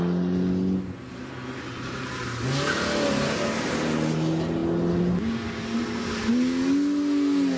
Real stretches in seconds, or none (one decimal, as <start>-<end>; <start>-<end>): 0.0-7.6